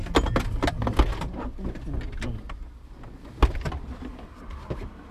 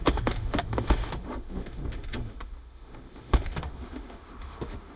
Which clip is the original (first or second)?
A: first